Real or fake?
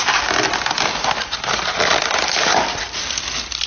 real